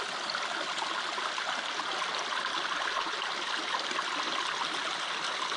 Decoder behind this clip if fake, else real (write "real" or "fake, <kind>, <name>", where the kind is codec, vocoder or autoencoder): real